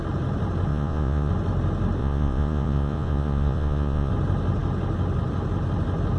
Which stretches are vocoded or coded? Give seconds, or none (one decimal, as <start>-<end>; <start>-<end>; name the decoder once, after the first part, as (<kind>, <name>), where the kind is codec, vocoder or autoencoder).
0.7-1.3 (vocoder, Vocos); 2.0-4.1